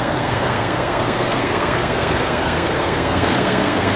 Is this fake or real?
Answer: fake